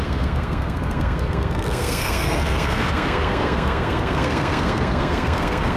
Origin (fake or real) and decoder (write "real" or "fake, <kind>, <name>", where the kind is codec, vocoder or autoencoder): fake, codec, SNAC